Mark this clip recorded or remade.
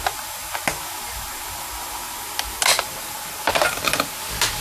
recorded